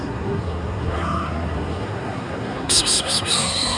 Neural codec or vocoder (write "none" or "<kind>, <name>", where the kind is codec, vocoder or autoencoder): codec, SNAC